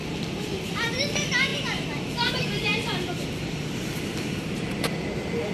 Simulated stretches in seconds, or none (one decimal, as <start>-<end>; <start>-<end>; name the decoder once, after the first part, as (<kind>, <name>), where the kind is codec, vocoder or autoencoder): none